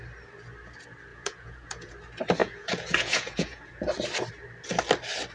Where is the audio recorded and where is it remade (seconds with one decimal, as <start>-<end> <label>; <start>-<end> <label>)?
0.0-1.1 recorded; 1.1-1.9 remade; 1.9-2.4 recorded; 2.4-3.7 remade; 3.7-5.3 recorded